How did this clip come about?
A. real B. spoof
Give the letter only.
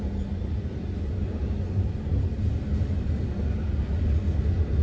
A